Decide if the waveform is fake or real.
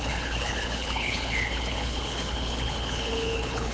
fake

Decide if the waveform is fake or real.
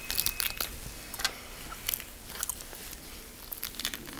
real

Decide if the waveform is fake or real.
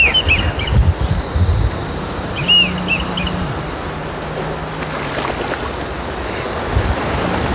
real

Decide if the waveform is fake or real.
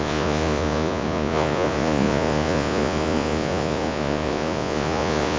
fake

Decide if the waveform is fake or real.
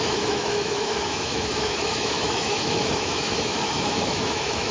fake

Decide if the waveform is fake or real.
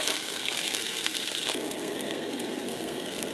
fake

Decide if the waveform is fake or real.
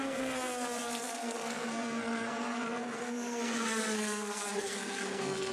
fake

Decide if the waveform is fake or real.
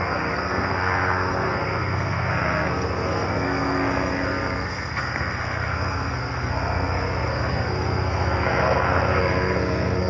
fake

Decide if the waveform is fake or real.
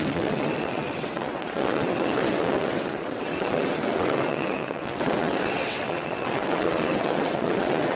fake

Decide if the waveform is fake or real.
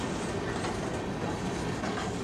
real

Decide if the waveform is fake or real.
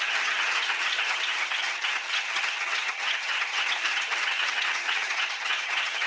fake